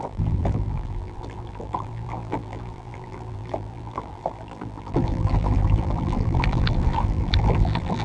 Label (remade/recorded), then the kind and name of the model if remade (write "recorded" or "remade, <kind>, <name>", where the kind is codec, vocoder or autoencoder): remade, vocoder, BigVGAN v2